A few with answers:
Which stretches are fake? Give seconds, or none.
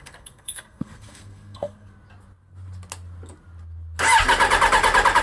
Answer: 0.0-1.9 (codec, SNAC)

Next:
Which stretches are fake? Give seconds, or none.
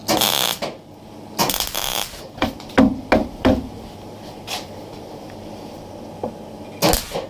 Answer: 1.4-2.3 (vocoder, BigVGAN v2); 3.2-5.9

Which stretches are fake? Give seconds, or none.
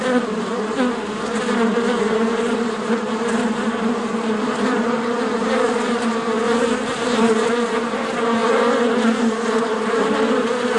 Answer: 0.0-8.4 (vocoder, BigVGAN v2); 9.0-10.8